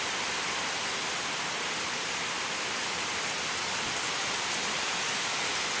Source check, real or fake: real